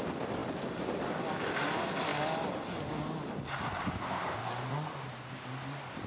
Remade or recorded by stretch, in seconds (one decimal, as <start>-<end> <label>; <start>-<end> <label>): 0.0-6.1 recorded